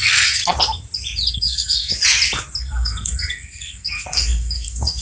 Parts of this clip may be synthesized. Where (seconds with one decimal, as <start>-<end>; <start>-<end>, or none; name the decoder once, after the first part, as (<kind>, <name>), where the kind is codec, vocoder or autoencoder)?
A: 0.0-0.4 (codec, SNAC); 1.3-1.9; 2.6-5.0